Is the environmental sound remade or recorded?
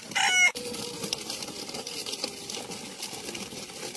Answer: recorded